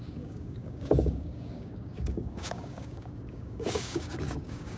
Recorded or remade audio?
remade